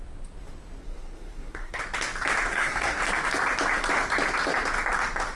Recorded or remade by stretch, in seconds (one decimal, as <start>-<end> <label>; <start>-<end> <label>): 0.0-0.8 recorded; 0.8-1.8 remade; 1.8-2.5 recorded; 2.5-3.0 remade; 3.0-5.3 recorded